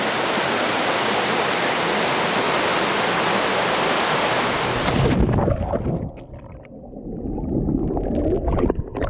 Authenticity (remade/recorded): recorded